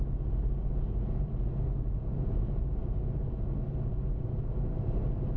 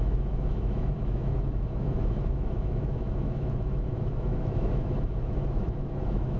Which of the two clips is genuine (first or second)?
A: first